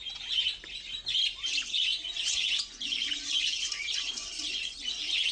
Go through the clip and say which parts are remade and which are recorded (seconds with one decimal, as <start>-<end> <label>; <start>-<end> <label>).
0.0-1.9 recorded; 1.9-5.3 remade